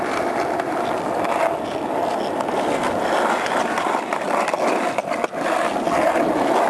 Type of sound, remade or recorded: recorded